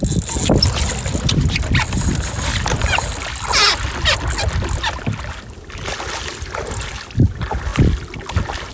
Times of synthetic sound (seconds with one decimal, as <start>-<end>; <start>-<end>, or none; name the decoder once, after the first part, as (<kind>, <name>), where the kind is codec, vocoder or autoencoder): none

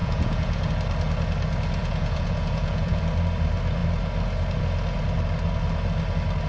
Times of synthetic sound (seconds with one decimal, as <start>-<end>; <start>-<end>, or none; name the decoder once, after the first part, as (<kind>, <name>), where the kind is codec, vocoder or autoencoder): 0.0-0.7 (vocoder, Vocos); 1.8-3.0